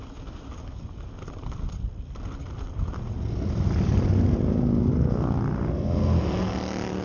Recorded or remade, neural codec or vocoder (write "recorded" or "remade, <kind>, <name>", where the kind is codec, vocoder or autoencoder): recorded